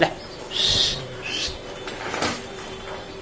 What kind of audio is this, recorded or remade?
recorded